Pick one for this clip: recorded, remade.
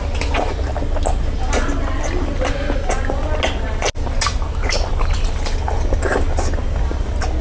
recorded